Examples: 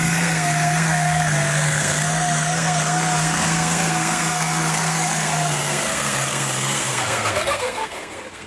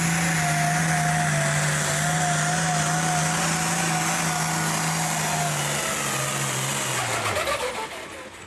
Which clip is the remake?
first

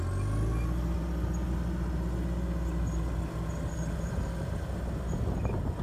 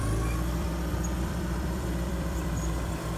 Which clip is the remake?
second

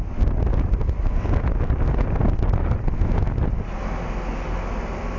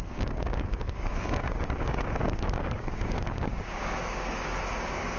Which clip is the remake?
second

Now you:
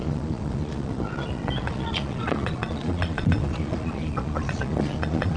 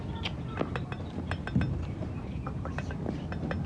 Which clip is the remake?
first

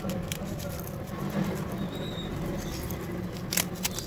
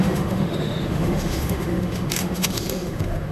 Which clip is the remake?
second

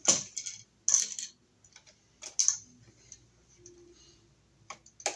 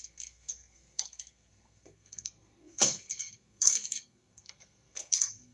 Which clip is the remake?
second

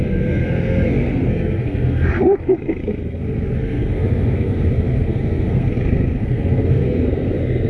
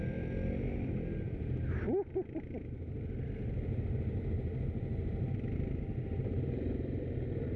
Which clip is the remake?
first